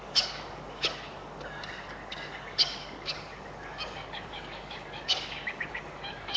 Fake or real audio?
fake